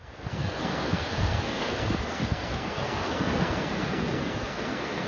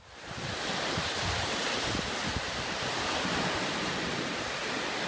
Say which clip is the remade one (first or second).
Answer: first